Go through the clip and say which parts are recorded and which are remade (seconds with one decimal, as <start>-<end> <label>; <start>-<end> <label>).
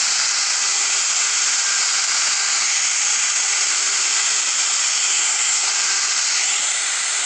0.0-5.1 recorded; 5.1-5.7 remade; 5.7-7.3 recorded